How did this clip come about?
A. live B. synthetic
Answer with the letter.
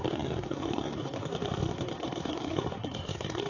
B